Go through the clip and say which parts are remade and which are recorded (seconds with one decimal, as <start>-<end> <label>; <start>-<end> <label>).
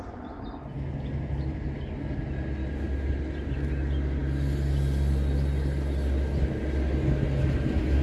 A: 0.0-8.0 recorded